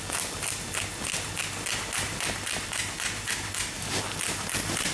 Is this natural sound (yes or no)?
yes